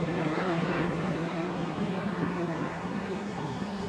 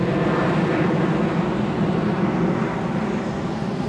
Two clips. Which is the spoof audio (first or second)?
first